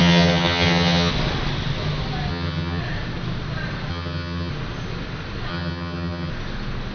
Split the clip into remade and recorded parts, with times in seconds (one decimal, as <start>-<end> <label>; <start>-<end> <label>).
0.0-1.1 remade; 1.1-2.3 recorded; 2.3-2.8 remade; 2.8-3.9 recorded; 3.9-4.5 remade; 4.5-5.5 recorded; 5.5-6.3 remade; 6.3-6.9 recorded